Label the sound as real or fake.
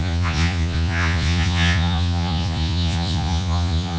fake